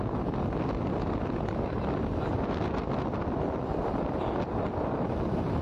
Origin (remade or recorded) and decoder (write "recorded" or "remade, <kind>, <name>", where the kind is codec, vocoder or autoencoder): recorded